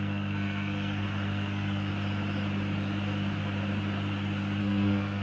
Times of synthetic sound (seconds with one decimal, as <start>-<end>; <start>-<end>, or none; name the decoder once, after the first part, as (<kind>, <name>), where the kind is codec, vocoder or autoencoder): 0.0-1.9 (codec, SNAC); 4.6-5.2